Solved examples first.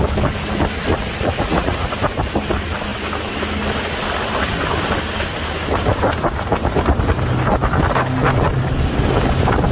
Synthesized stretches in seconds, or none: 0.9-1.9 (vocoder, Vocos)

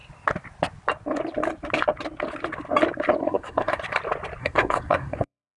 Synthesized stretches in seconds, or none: 3.2-3.8 (codec, SNAC); 4.4-5.6

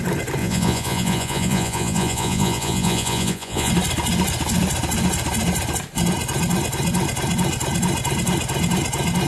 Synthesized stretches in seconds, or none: 0.4-3.7 (vocoder, Vocos)

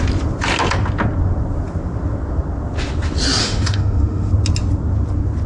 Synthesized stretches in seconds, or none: 3.4-4.3 (autoencoder, DAC-VAE)